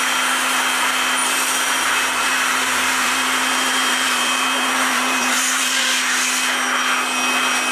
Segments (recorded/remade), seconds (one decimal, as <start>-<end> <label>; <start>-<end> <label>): 0.0-1.2 recorded; 1.2-5.8 remade; 5.8-7.7 recorded